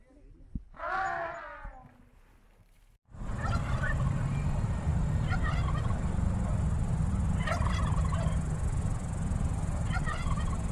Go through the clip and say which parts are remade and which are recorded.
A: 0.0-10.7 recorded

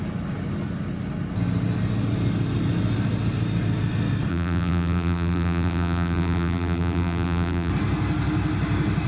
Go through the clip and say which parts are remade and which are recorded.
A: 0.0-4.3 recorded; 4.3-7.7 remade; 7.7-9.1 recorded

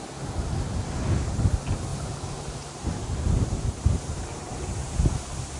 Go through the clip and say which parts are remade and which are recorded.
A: 0.0-1.9 recorded; 1.9-5.1 remade; 5.1-5.6 recorded

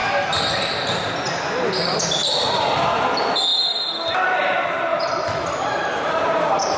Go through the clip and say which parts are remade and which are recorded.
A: 0.0-1.1 remade; 1.1-2.2 recorded; 2.2-2.7 remade; 2.7-4.9 recorded; 4.9-6.8 remade

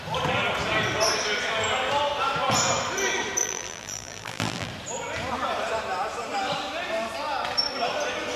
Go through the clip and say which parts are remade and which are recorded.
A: 0.0-3.4 recorded; 3.4-4.7 remade; 4.7-8.4 recorded

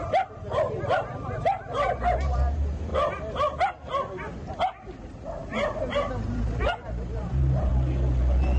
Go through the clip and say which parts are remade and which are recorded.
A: 0.0-2.9 remade; 2.9-5.0 recorded; 5.0-7.7 remade; 7.7-8.6 recorded

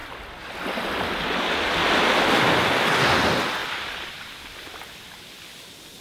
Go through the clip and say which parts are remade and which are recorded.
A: 0.0-1.4 remade; 1.4-3.6 recorded; 3.6-4.8 remade; 4.8-6.0 recorded